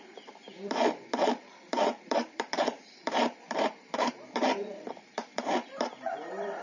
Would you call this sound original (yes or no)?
no